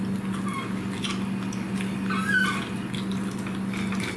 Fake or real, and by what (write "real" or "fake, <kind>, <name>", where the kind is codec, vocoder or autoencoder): real